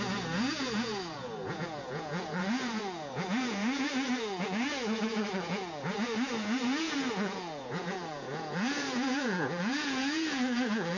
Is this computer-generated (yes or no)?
yes